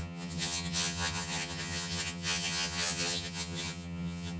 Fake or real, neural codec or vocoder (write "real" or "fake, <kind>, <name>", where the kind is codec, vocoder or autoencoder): fake, vocoder, HiFi-GAN